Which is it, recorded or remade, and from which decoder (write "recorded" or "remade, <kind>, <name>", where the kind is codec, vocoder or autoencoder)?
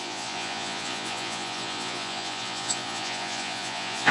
remade, vocoder, Vocos